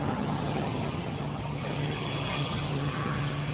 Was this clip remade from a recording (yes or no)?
yes